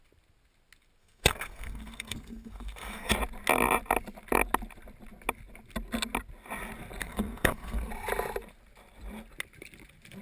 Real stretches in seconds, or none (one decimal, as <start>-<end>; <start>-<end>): 0.0-1.0; 3.1-7.0; 7.9-10.2